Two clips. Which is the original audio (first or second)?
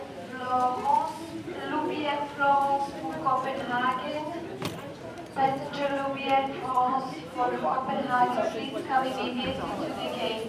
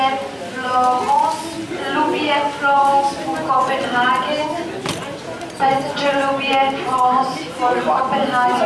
second